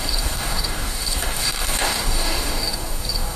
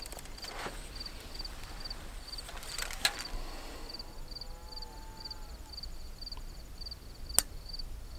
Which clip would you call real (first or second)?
second